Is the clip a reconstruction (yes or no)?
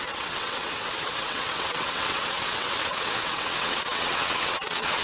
yes